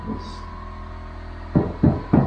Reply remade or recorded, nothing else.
recorded